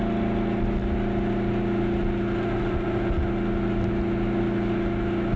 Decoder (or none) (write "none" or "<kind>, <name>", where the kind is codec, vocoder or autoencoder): none